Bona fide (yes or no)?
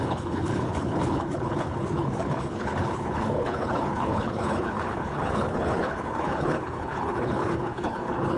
no